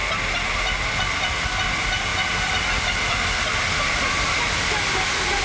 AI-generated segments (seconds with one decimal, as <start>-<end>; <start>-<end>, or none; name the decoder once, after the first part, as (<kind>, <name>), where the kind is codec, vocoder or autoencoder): 2.1-5.4 (vocoder, BigVGAN v2)